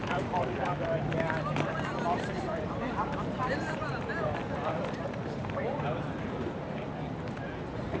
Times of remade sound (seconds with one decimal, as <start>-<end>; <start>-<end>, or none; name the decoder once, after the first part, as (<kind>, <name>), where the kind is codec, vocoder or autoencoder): 0.0-0.7 (vocoder, BigVGAN v2); 2.4-3.9